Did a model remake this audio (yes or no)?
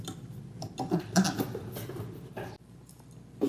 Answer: no